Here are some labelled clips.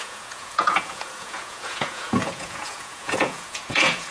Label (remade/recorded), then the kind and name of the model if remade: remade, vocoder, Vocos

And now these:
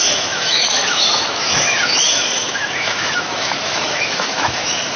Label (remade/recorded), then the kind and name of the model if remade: remade, autoencoder, DAC-VAE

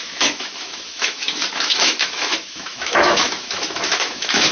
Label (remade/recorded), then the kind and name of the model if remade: remade, autoencoder, DAC-VAE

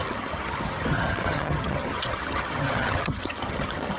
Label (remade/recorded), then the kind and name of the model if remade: remade, vocoder, HiFi-GAN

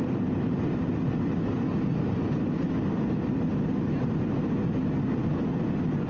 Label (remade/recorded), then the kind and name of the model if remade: recorded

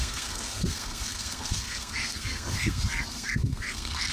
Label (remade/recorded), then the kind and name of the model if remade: remade, codec, SNAC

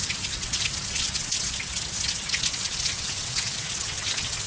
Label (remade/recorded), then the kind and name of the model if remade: remade, vocoder, WaveNeXt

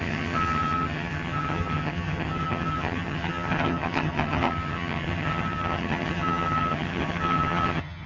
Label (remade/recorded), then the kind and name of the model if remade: remade, vocoder, HiFi-GAN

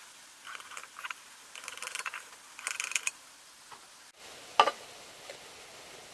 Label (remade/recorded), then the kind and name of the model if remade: recorded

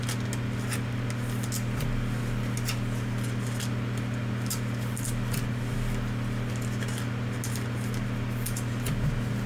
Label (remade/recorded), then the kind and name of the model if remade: recorded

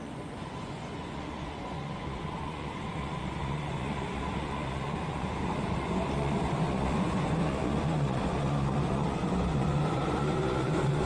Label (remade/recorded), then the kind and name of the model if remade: remade, vocoder, Vocos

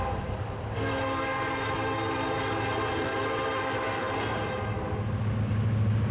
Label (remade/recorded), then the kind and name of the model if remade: recorded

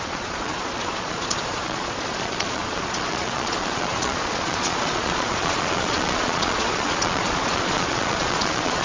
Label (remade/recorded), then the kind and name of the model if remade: remade, vocoder, Vocos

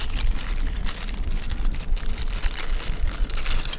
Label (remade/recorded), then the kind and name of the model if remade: remade, vocoder, BigVGAN v2